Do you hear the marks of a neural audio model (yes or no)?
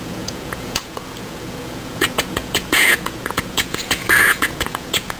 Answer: yes